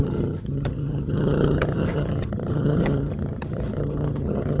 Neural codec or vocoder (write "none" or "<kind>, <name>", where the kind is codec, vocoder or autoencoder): vocoder, HiFi-GAN